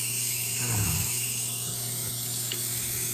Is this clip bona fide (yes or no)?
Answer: no